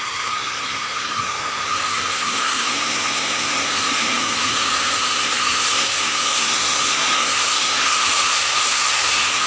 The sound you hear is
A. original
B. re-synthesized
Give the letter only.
B